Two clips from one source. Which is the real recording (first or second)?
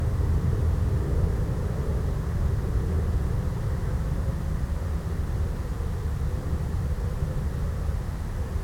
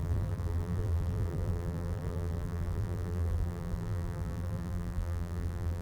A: first